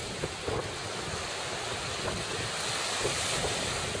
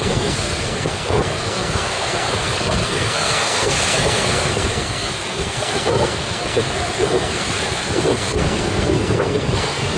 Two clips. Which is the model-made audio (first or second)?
second